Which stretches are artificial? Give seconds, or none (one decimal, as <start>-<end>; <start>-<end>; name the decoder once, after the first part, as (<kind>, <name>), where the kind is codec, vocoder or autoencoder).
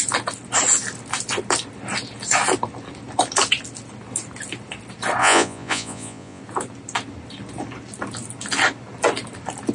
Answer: 5.2-6.4 (vocoder, Vocos)